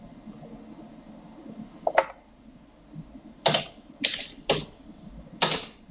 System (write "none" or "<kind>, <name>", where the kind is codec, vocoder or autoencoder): none